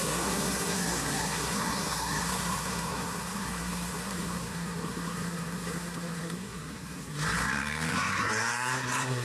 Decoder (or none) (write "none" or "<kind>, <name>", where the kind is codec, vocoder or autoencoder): codec, SNAC